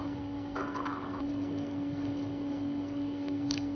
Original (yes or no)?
no